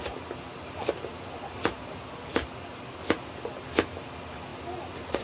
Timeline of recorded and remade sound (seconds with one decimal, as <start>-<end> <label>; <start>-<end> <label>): 0.0-5.2 recorded